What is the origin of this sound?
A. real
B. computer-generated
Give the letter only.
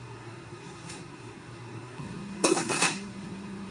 B